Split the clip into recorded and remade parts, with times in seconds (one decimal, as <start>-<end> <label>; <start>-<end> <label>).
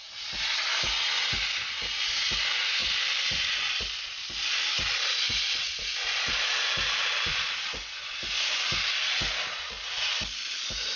0.0-2.8 recorded; 2.8-7.5 remade; 7.5-11.0 recorded